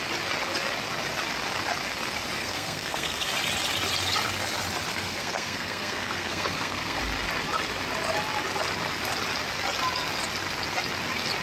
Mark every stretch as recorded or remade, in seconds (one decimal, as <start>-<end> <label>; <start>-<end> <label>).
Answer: 0.0-2.4 recorded; 2.4-3.3 remade; 3.3-4.9 recorded; 4.9-7.0 remade; 7.0-11.4 recorded